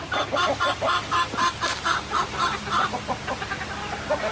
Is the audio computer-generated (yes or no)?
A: no